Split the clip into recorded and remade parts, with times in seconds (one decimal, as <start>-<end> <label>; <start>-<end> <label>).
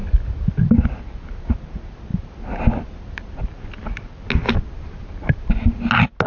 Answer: 0.0-6.3 recorded